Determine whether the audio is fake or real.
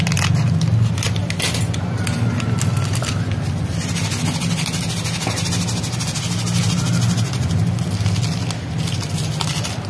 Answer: real